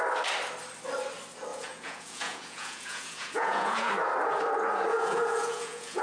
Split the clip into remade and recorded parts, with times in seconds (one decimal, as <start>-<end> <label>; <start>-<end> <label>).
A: 0.0-1.5 recorded; 1.5-3.9 remade; 3.9-4.9 recorded; 4.9-6.0 remade